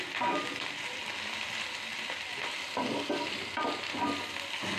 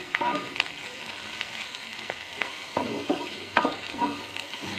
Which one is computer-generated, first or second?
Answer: second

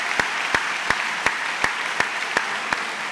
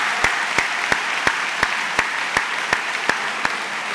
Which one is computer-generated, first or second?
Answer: first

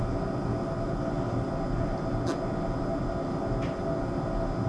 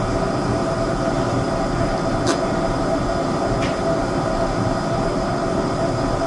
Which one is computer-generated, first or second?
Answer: second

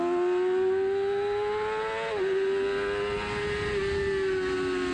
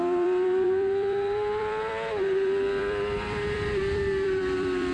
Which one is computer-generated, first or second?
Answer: second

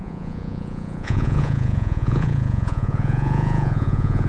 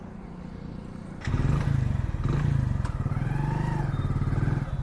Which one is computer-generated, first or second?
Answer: first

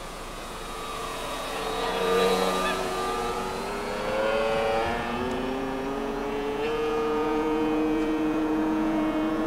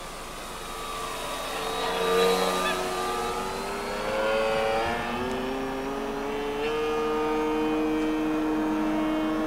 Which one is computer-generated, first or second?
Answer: first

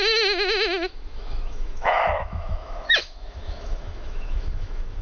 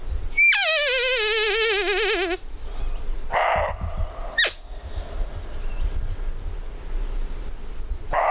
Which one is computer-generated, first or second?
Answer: first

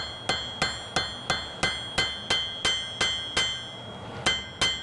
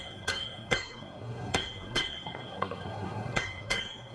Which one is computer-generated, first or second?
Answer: second